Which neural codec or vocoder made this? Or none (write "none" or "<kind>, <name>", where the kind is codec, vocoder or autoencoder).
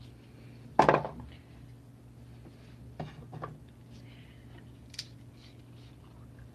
none